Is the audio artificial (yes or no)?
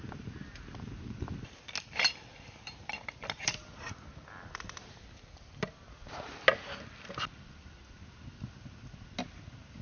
no